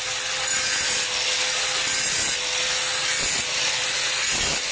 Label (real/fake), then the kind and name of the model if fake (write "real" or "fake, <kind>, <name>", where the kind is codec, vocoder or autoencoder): real